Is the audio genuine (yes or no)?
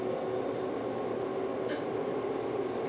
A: yes